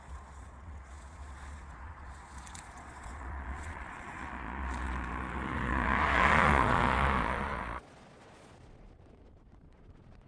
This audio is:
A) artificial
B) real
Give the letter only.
A